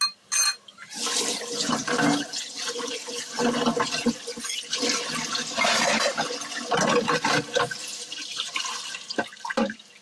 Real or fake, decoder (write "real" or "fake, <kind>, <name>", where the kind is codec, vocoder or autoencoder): real